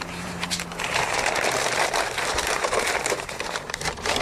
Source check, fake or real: fake